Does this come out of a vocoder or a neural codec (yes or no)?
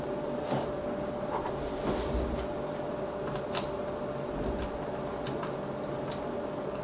no